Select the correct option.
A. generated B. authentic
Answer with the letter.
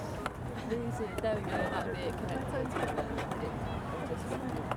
B